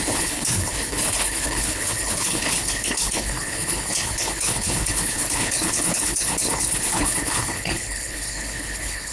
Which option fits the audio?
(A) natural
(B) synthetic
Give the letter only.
B